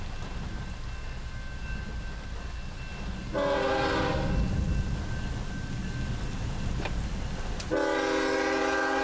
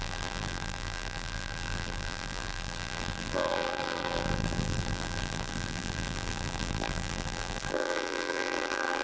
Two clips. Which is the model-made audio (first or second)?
second